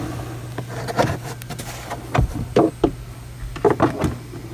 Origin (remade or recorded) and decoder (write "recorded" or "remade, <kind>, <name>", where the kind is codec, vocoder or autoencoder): recorded